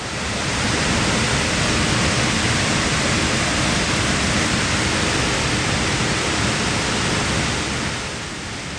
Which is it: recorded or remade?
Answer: recorded